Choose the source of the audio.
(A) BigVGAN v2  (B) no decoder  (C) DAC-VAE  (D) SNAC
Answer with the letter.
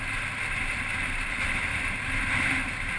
A